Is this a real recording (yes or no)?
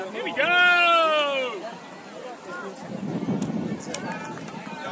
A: yes